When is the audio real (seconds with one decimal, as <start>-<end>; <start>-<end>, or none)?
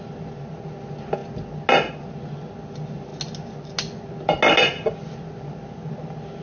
0.0-6.4